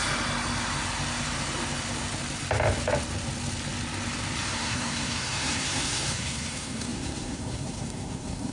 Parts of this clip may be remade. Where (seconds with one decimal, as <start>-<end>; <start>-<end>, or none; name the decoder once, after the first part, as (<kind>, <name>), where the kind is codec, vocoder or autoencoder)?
4.5-8.5 (codec, SNAC)